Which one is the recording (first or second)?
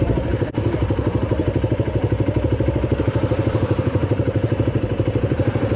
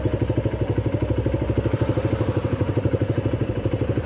second